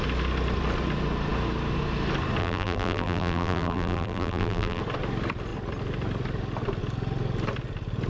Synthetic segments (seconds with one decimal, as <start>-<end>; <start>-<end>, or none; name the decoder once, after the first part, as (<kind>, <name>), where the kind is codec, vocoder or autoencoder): 2.4-4.8 (vocoder, BigVGAN v2)